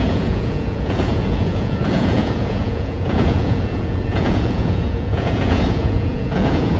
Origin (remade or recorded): remade